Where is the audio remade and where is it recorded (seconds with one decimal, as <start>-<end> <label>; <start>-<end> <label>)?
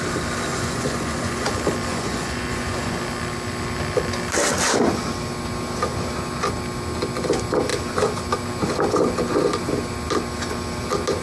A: 0.0-0.5 recorded; 0.5-1.5 remade; 1.5-1.9 recorded; 1.9-3.0 remade; 3.0-11.2 recorded